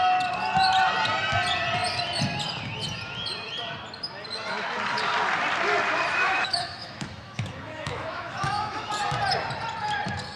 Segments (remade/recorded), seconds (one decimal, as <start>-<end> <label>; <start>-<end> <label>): 0.0-6.1 recorded; 6.1-8.9 remade; 8.9-10.4 recorded